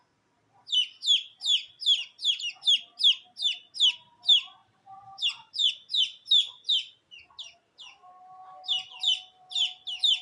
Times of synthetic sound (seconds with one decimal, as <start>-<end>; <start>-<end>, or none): 4.6-5.7